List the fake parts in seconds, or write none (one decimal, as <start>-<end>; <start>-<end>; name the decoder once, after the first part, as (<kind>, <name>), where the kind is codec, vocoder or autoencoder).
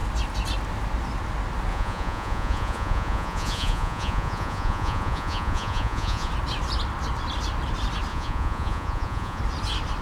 1.7-6.3 (vocoder, Vocos); 8.1-9.4